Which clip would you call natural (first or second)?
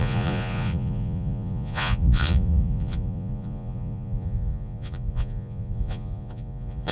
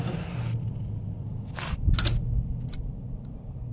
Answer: second